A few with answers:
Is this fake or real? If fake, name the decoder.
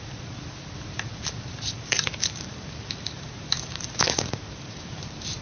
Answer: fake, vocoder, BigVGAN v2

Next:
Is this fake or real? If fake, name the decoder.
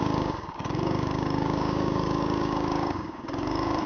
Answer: fake, codec, DAC